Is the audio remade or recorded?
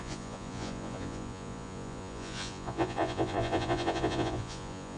remade